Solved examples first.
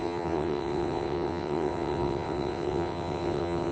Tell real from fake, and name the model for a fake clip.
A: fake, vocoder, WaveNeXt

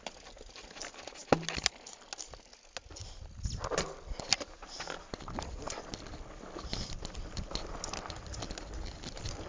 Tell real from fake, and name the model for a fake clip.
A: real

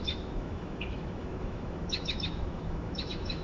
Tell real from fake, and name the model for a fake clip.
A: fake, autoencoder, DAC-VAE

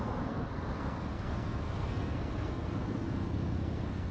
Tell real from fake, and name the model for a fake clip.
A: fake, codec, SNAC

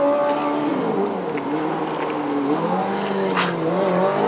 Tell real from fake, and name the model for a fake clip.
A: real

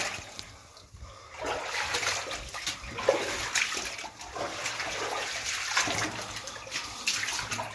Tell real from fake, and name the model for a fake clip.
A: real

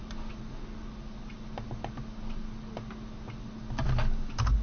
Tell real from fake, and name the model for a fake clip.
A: real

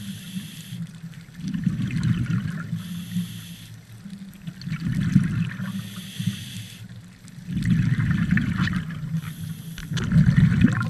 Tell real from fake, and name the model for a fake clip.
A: real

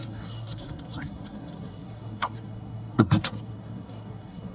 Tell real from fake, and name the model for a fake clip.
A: fake, codec, SNAC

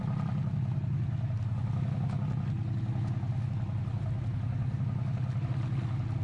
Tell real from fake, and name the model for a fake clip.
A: real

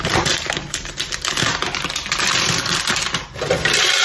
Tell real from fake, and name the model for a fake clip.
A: fake, vocoder, BigVGAN v2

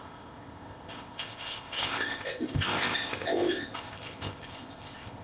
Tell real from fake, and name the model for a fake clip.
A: fake, codec, ZipCodec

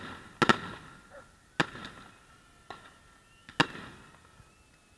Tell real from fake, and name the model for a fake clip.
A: real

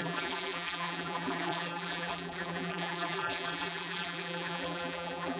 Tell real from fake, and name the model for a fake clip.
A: fake, vocoder, BigVGAN v2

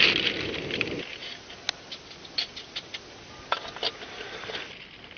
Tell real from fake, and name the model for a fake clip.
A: real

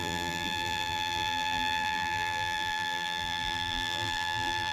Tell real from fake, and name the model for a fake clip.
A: fake, vocoder, BigVGAN v2